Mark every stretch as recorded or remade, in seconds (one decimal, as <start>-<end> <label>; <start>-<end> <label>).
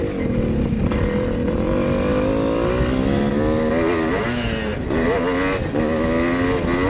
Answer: 0.0-6.9 recorded